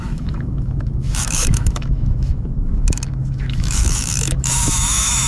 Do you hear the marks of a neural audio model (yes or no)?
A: yes